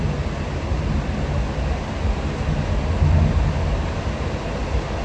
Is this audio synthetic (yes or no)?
no